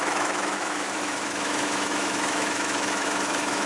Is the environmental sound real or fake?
fake